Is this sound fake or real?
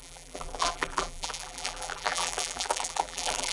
fake